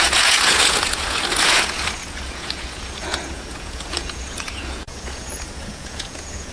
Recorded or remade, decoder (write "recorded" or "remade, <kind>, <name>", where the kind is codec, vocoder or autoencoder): remade, vocoder, Vocos